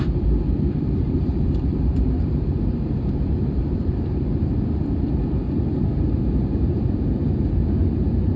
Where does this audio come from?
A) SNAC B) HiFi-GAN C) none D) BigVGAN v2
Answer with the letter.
D